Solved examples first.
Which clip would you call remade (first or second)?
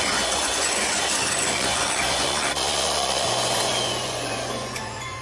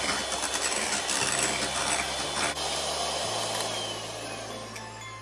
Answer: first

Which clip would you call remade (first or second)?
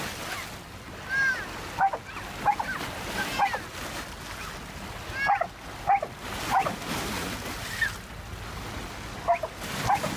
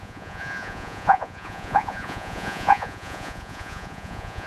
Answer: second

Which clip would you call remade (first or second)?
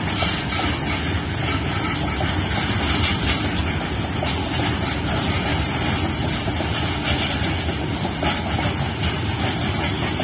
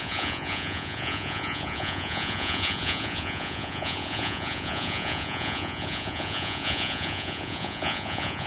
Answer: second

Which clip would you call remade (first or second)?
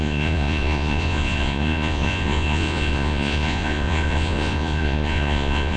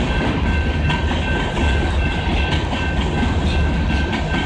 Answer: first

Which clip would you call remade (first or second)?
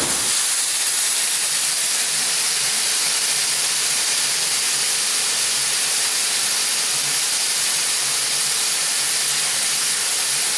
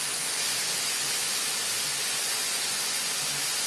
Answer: second